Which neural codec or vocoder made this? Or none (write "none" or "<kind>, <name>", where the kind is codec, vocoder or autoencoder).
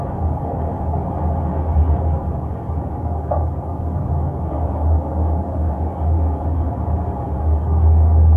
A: codec, DAC